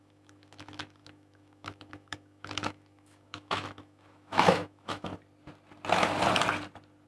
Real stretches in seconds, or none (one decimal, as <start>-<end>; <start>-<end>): 5.1-7.1